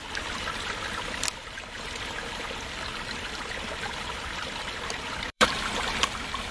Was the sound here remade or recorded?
remade